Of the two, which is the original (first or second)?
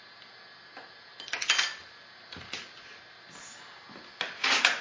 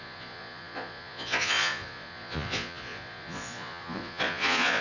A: first